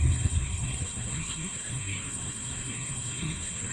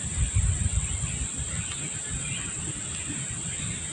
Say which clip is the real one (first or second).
second